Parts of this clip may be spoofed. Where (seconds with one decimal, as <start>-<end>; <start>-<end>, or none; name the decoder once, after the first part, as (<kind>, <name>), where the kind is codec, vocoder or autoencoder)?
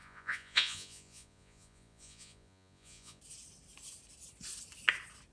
0.0-3.2 (vocoder, Vocos)